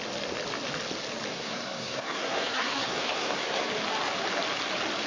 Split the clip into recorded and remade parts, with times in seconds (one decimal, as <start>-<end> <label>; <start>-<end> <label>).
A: 0.0-1.3 recorded; 1.3-3.7 remade; 3.7-5.1 recorded